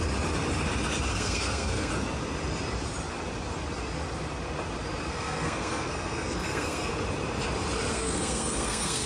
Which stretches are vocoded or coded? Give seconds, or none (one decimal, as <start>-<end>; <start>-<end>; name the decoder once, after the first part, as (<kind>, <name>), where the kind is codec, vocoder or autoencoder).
1.1-1.9 (codec, SNAC); 5.1-6.9; 7.9-9.1